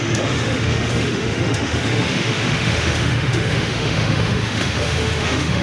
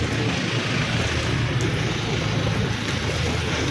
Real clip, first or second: second